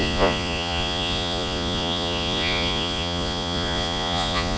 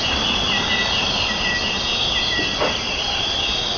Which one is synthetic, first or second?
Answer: first